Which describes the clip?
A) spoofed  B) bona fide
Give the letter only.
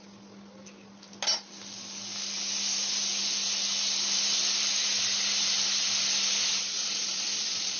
B